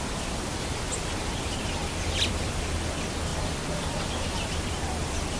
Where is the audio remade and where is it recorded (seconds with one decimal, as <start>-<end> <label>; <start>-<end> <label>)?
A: 0.0-1.8 recorded; 1.8-2.5 remade; 2.5-3.3 recorded; 3.3-5.4 remade